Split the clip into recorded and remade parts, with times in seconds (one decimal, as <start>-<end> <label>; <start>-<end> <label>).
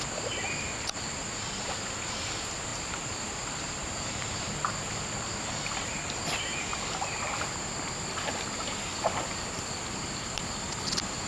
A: 0.0-2.7 recorded; 2.7-4.9 remade; 4.9-11.3 recorded